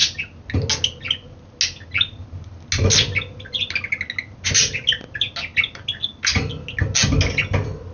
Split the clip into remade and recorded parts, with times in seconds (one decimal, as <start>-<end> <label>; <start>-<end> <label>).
0.0-7.9 recorded